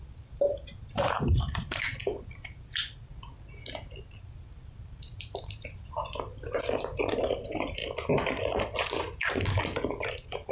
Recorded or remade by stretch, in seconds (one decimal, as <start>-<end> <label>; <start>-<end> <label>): 0.0-3.1 remade; 3.1-4.1 recorded; 4.1-7.8 remade; 7.8-10.0 recorded; 10.0-10.5 remade